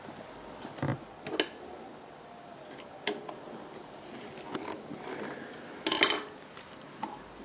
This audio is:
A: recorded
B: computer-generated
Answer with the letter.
A